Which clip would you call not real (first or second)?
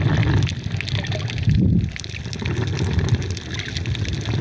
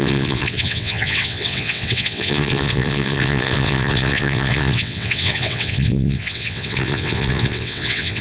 second